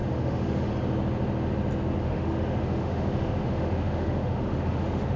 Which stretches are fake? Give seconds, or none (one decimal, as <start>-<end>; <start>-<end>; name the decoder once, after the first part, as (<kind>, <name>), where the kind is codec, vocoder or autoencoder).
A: 0.0-0.7 (autoencoder, DAC-VAE); 2.0-5.2